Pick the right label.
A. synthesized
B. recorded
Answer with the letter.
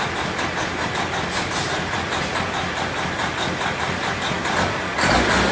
B